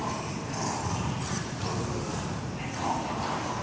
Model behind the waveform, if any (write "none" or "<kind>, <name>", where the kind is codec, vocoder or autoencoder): none